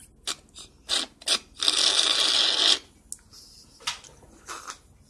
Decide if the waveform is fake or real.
real